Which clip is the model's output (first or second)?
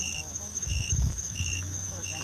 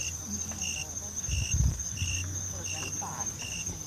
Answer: first